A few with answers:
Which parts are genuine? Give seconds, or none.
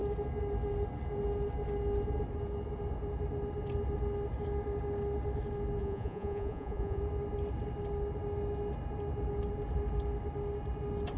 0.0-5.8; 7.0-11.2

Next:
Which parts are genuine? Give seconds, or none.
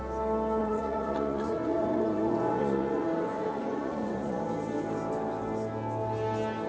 0.0-0.6; 4.4-6.7